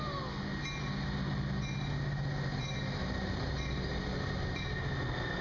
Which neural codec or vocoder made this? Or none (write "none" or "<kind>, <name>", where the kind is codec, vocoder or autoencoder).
none